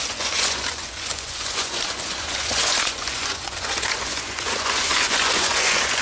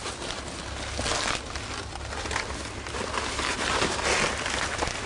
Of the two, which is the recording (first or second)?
second